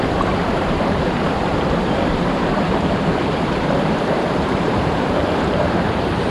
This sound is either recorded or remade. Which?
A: remade